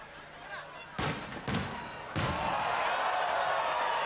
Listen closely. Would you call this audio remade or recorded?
recorded